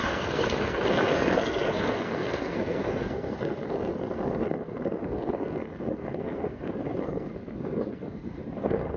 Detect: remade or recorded remade